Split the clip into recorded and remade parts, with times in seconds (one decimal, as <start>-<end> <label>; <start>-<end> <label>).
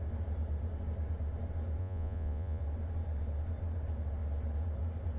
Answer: 0.0-1.8 recorded; 1.8-2.6 remade; 2.6-5.2 recorded